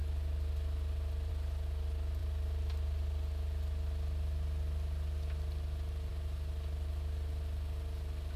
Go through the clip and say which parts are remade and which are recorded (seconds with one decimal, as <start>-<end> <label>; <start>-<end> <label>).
0.0-8.4 recorded